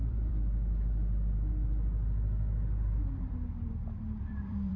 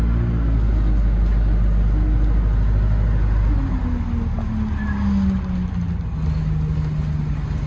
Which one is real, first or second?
second